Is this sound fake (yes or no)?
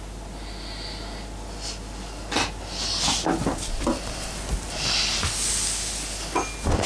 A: no